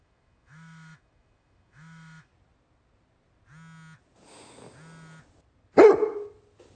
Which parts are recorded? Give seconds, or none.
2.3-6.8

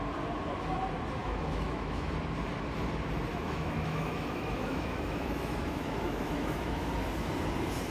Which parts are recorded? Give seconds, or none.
0.0-1.2; 2.1-3.3; 6.9-7.9

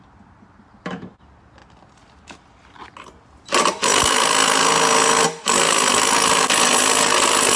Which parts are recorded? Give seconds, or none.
0.0-7.6